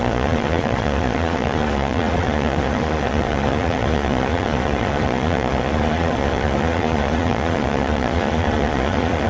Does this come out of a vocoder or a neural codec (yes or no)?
yes